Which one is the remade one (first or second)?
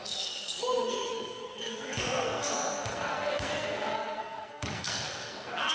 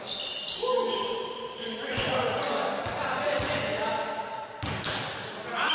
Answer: first